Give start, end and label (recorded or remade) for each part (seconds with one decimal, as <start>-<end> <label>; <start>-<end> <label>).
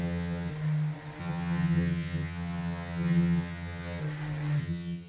0.0-0.5 remade; 0.5-1.2 recorded; 1.2-4.0 remade; 4.0-4.6 recorded; 4.6-5.1 remade